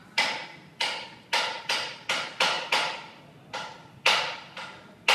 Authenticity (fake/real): real